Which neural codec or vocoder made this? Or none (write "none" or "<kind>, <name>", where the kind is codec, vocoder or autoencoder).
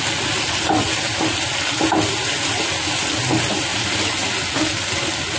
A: none